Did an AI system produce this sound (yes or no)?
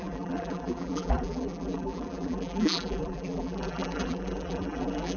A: yes